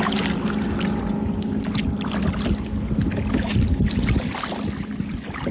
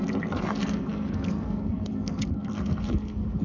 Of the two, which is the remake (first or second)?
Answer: second